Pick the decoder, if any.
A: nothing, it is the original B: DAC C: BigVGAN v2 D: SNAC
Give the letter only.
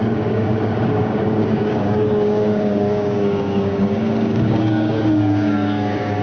B